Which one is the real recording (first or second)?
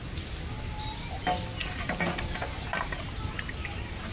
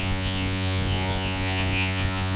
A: first